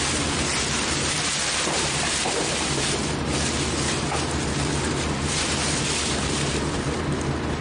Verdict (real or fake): fake